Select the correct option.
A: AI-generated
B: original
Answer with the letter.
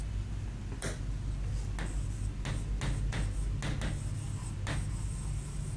B